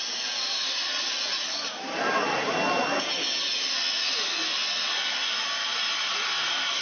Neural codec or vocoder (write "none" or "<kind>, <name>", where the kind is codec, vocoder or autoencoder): none